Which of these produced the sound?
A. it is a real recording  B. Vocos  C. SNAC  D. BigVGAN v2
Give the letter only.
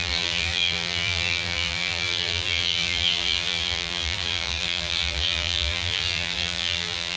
D